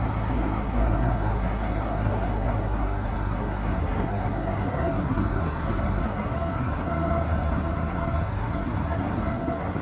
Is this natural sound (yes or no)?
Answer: no